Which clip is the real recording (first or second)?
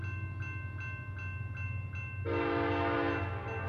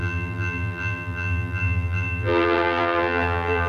first